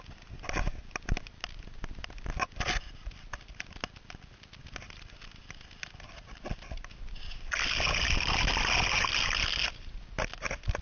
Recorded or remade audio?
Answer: recorded